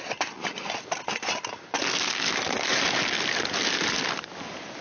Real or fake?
real